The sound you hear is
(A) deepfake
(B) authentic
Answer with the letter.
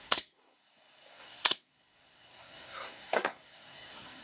A